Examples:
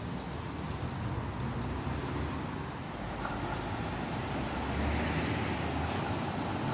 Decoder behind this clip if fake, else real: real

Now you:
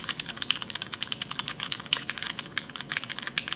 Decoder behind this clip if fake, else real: fake, vocoder, Vocos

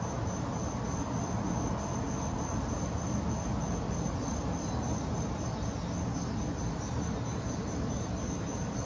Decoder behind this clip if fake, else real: real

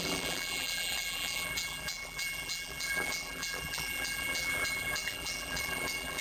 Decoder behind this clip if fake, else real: fake, vocoder, BigVGAN v2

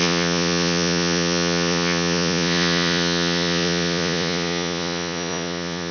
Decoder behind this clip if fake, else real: fake, vocoder, Vocos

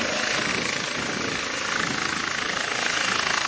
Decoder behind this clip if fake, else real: real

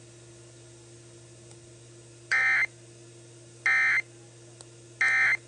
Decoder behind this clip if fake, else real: real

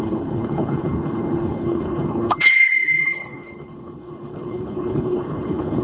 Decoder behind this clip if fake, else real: fake, codec, HILCodec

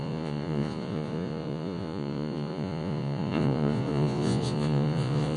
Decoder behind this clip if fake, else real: fake, vocoder, Vocos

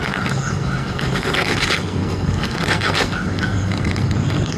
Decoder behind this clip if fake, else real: fake, codec, SNAC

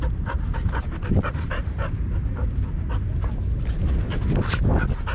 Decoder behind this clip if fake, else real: real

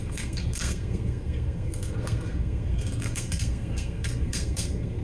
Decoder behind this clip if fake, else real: fake, codec, SNAC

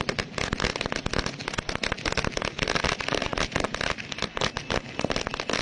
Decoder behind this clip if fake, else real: real